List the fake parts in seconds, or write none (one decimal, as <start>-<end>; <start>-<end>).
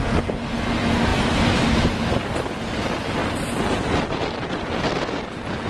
none